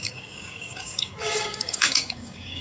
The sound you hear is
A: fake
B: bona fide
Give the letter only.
A